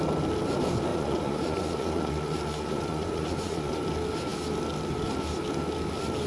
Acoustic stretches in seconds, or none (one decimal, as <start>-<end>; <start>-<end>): 0.0-0.9; 3.8-6.3